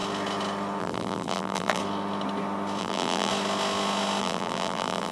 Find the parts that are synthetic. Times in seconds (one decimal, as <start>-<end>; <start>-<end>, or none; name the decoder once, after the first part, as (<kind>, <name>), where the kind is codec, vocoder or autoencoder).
0.8-1.8 (vocoder, BigVGAN v2); 2.8-3.3; 4.2-5.1